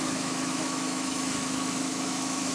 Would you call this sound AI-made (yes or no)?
yes